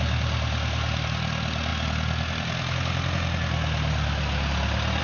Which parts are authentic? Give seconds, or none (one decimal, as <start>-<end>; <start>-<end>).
0.0-5.0